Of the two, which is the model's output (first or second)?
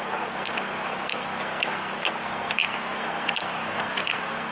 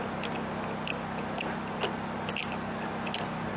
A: first